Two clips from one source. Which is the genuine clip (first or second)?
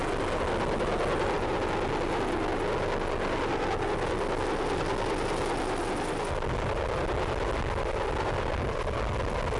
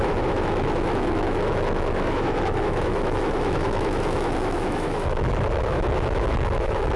first